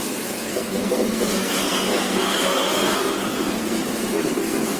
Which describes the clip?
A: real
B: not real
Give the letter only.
B